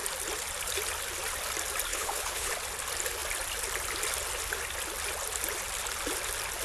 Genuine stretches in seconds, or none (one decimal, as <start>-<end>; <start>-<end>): 0.0-1.9; 2.5-6.6